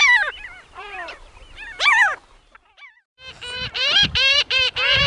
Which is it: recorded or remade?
remade